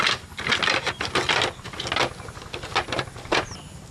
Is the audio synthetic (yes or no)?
no